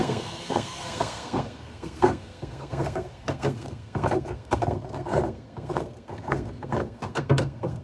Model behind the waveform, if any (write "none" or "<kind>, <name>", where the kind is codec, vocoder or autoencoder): codec, SNAC